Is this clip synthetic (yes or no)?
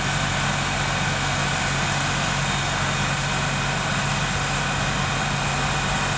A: no